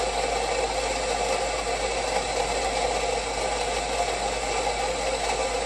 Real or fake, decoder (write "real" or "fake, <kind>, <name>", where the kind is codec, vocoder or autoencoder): real